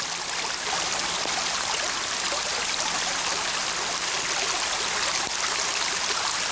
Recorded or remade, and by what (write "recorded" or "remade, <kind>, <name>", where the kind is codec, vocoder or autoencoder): recorded